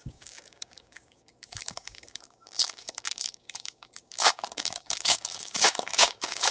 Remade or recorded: remade